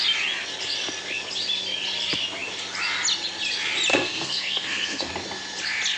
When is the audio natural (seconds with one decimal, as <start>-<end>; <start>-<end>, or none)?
0.0-3.9; 5.1-6.0